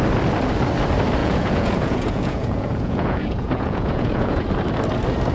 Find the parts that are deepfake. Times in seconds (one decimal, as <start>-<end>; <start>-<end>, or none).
1.2-4.4